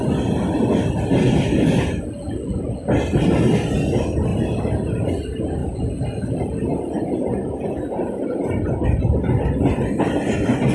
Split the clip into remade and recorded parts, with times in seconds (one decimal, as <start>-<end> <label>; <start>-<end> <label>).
0.0-4.3 recorded; 4.3-5.1 remade; 5.1-5.6 recorded; 5.6-9.0 remade; 9.0-10.7 recorded